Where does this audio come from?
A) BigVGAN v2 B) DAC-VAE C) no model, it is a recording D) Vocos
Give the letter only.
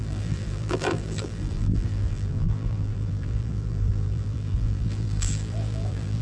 A